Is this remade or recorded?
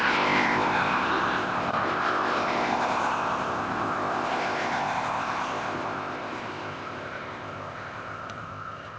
remade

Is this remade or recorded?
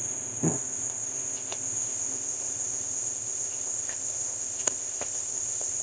remade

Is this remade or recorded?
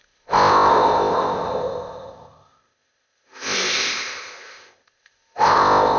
remade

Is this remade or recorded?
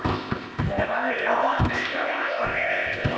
remade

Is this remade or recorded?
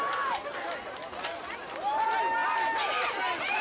recorded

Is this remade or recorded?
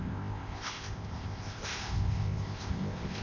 remade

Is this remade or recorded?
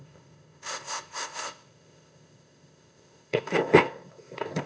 remade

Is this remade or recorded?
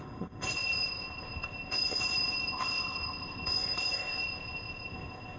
remade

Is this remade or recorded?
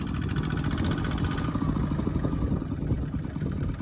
recorded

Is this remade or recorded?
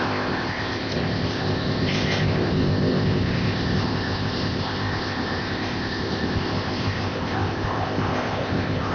remade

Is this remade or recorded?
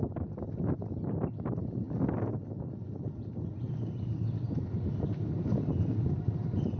recorded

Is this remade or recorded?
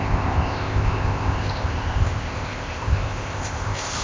remade